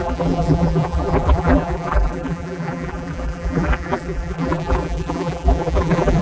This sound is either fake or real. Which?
fake